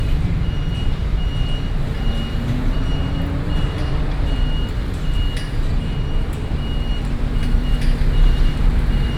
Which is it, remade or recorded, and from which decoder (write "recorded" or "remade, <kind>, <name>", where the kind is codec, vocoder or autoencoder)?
remade, vocoder, BigVGAN v2